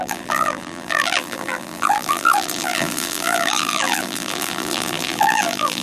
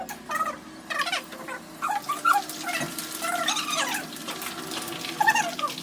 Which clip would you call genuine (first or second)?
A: second